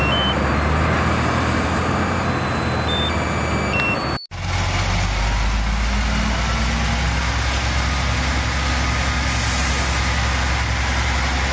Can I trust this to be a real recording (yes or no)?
yes